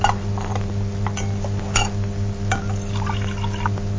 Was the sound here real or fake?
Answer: real